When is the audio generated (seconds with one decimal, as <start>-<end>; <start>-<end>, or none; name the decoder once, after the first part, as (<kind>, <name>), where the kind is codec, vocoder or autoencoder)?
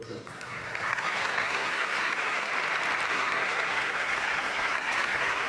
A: 0.0-2.5 (codec, SNAC); 3.1-5.5